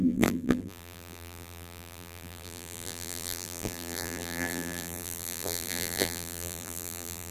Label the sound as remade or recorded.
remade